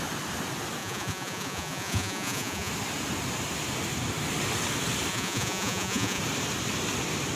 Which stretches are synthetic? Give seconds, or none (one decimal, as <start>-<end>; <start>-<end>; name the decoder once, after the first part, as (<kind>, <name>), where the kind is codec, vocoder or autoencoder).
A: 0.8-2.7 (vocoder, Vocos); 5.1-6.2